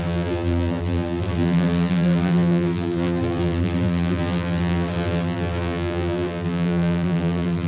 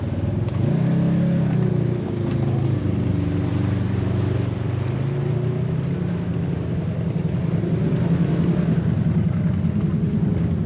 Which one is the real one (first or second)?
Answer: second